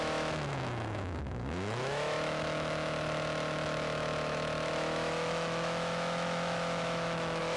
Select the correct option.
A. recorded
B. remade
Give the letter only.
B